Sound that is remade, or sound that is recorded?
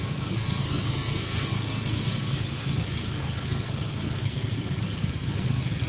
remade